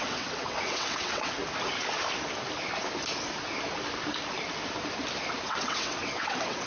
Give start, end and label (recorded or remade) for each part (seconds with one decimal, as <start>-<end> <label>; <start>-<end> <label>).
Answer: 0.0-1.4 remade; 1.4-5.4 recorded; 5.4-6.7 remade